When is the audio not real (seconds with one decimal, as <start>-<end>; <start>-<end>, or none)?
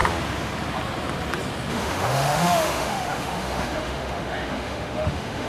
1.7-5.5